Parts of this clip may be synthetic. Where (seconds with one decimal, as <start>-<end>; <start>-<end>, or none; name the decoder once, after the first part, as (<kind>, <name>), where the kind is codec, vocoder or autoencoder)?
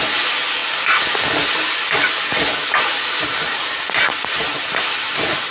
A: none